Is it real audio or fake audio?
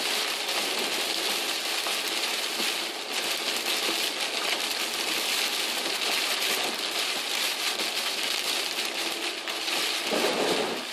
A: real